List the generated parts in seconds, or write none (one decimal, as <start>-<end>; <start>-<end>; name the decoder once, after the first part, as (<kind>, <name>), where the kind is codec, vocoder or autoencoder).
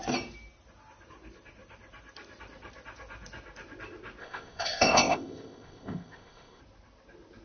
4.2-6.6 (codec, ZipCodec)